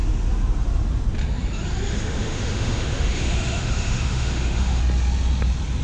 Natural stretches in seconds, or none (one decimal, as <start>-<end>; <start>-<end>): 0.0-1.9; 4.8-5.8